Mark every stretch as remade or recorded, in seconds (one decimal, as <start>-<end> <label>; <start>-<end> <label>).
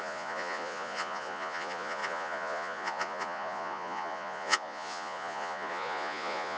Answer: 0.0-6.6 remade